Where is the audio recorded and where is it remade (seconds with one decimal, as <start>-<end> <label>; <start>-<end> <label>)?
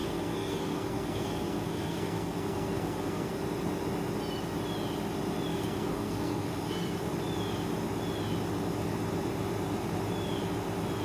0.0-3.3 remade; 3.3-5.5 recorded; 5.5-7.1 remade; 7.1-11.0 recorded